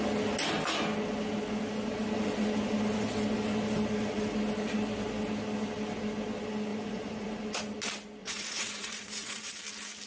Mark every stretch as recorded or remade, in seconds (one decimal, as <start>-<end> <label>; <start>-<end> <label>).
0.0-6.7 recorded; 6.7-7.4 remade; 7.4-8.2 recorded; 8.2-9.6 remade; 9.6-10.1 recorded